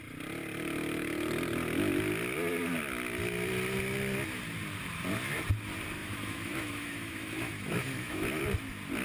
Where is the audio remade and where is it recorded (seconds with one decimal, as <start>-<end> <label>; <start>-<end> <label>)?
0.0-6.0 recorded; 6.0-8.4 remade; 8.4-9.0 recorded